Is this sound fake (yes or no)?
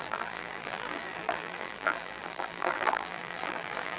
yes